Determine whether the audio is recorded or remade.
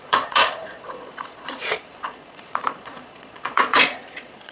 remade